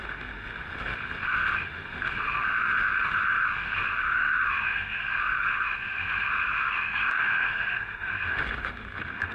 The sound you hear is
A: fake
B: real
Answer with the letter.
A